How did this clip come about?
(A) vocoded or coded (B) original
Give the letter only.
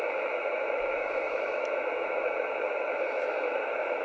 A